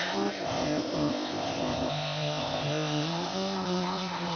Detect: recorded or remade remade